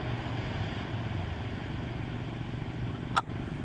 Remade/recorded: recorded